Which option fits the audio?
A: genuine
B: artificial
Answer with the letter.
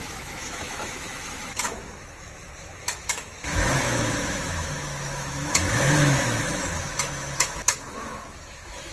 B